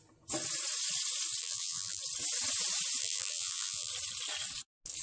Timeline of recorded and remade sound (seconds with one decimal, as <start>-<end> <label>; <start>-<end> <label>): 0.0-1.4 recorded; 1.4-2.0 remade; 2.0-3.0 recorded; 3.0-3.9 remade; 3.9-5.0 recorded